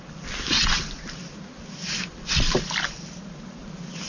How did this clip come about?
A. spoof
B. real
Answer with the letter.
B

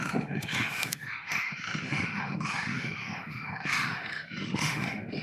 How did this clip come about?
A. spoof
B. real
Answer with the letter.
A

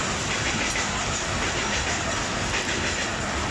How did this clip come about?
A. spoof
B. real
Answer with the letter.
B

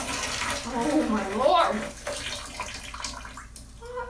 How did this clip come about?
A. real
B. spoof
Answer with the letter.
A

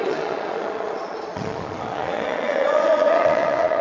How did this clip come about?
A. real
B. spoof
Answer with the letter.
B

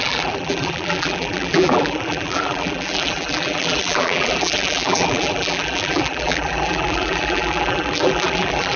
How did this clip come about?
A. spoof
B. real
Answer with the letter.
A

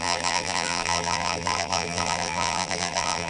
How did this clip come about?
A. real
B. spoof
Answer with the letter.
B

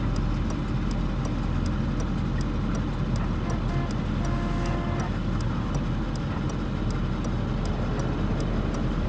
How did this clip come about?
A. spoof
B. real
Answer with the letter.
B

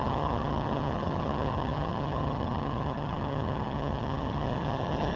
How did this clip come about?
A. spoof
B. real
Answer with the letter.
A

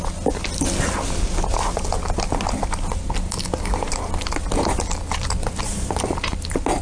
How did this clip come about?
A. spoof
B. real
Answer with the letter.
B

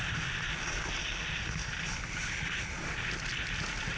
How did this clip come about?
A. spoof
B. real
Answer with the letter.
B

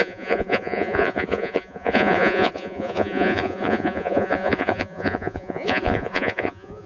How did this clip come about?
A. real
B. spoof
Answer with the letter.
B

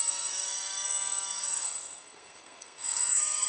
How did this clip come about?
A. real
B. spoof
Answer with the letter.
B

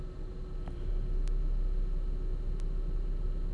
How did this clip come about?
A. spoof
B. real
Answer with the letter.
B